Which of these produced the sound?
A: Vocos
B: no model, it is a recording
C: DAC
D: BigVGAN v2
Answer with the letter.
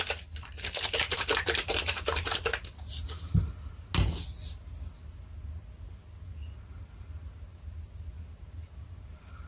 B